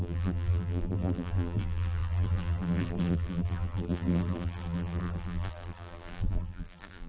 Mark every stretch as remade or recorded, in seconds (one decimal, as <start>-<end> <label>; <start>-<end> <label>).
0.0-7.1 remade